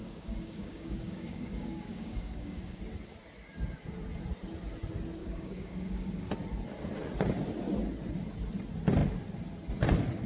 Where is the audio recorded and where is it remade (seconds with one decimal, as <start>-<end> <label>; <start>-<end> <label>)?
0.0-2.8 remade; 2.8-5.2 recorded; 5.2-6.3 remade; 6.3-10.3 recorded